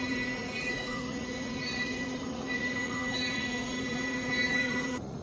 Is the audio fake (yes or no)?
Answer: yes